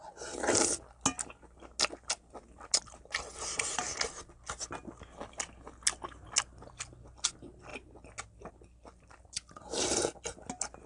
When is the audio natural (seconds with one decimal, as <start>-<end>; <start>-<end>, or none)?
0.0-10.9